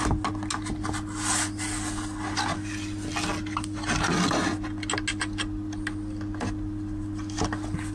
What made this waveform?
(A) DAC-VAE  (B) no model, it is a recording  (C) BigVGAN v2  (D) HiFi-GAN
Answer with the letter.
B